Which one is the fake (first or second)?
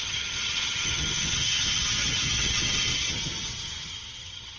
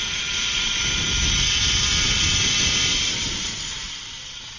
first